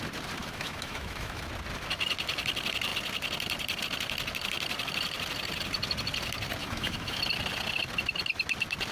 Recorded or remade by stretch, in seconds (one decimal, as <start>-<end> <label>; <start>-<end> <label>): 0.0-0.4 recorded; 0.4-1.4 remade; 1.4-6.6 recorded; 6.6-7.2 remade; 7.2-8.9 recorded